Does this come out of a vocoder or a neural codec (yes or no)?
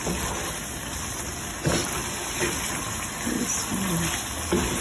no